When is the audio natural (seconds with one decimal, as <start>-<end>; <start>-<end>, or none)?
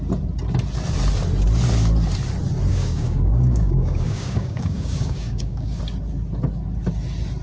0.0-2.7; 5.8-7.4